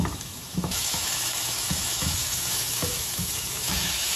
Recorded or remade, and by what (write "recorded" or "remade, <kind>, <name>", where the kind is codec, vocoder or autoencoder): remade, autoencoder, DAC-VAE